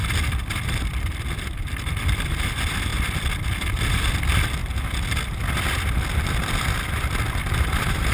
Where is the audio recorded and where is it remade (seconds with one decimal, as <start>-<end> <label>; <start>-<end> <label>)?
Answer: 0.0-2.9 remade; 2.9-3.6 recorded; 3.6-4.6 remade; 4.6-6.2 recorded; 6.2-8.1 remade